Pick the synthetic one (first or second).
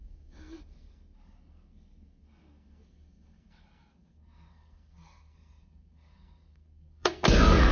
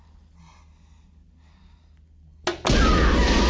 first